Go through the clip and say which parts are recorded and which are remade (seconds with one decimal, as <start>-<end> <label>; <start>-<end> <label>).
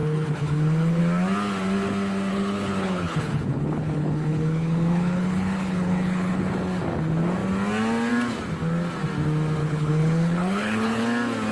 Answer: 0.0-1.0 remade; 1.0-2.3 recorded; 2.3-6.4 remade; 6.4-9.6 recorded; 9.6-11.0 remade; 11.0-11.5 recorded